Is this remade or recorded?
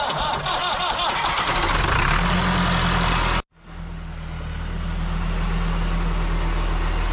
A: recorded